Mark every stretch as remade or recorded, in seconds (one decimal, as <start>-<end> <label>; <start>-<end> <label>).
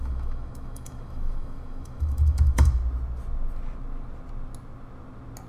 0.0-2.8 remade; 2.8-5.5 recorded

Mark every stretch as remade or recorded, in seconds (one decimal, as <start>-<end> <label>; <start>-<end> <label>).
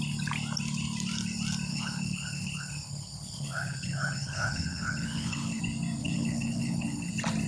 0.0-1.7 recorded; 1.7-5.6 remade; 5.6-6.0 recorded; 6.0-7.1 remade; 7.1-7.5 recorded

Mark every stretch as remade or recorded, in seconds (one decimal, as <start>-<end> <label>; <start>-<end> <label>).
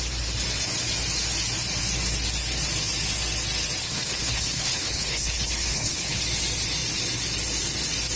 0.0-3.8 recorded; 3.8-6.2 remade; 6.2-8.2 recorded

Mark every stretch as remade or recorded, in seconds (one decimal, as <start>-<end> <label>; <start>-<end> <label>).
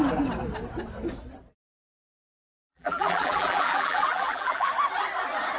0.0-2.7 recorded; 2.7-4.7 remade; 4.7-5.6 recorded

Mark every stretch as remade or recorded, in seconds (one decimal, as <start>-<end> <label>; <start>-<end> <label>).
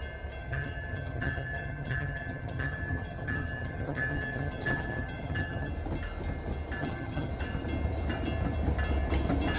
0.0-0.4 recorded; 0.4-5.7 remade; 5.7-6.8 recorded; 6.8-7.3 remade; 7.3-9.6 recorded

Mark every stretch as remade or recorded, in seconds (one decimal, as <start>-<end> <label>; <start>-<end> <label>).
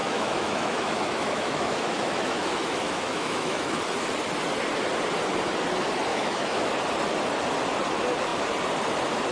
0.0-3.8 remade; 3.8-6.1 recorded; 6.1-6.7 remade; 6.7-9.3 recorded